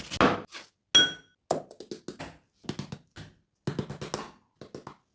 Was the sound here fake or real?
real